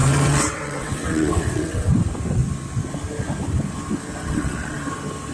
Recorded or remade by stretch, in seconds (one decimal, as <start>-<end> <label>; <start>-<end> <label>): 0.0-1.9 remade; 1.9-4.2 recorded; 4.2-4.8 remade; 4.8-5.3 recorded